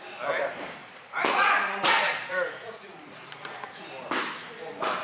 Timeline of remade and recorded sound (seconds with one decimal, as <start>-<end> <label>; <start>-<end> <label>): 0.0-0.8 recorded; 0.8-3.8 remade; 3.8-5.0 recorded